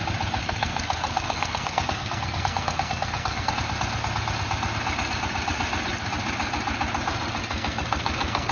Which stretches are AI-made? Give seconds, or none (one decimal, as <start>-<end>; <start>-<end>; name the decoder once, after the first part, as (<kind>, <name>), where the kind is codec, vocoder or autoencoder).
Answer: 0.4-3.5 (codec, SNAC); 7.4-8.5